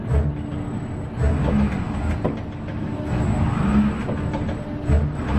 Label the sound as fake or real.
real